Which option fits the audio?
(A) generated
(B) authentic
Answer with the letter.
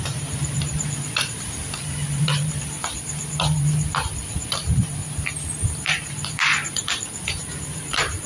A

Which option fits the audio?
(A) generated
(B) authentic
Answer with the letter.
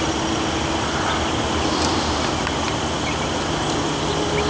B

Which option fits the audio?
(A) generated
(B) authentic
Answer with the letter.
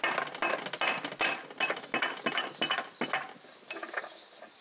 B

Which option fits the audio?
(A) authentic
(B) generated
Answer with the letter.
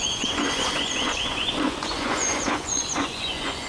B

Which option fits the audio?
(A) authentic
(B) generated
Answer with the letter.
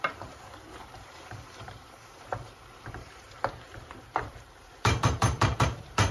B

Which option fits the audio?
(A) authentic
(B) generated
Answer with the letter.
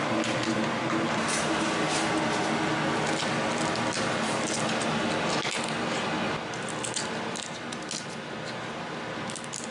A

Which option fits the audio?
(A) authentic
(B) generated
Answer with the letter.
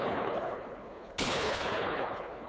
B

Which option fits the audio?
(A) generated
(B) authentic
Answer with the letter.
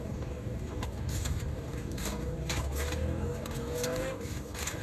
A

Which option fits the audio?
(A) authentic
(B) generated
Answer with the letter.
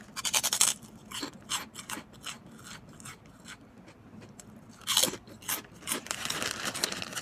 A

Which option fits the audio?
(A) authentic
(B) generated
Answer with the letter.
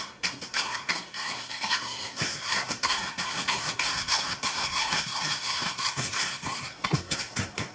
B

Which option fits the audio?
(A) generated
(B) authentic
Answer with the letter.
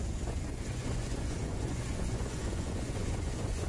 A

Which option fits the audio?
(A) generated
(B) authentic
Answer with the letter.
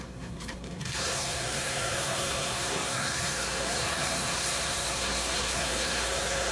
A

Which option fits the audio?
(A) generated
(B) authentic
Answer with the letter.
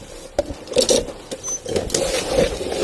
B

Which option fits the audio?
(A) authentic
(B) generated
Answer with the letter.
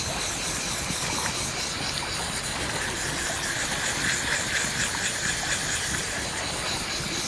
A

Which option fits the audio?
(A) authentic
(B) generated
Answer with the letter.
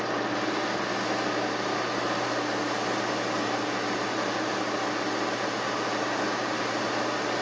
A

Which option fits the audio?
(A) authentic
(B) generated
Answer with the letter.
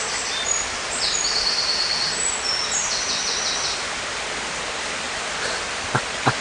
A